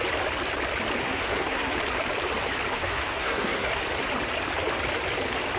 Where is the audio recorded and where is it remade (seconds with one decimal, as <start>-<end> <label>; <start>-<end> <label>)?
0.0-1.0 recorded; 1.0-1.7 remade; 1.7-2.7 recorded; 2.7-3.8 remade; 3.8-5.6 recorded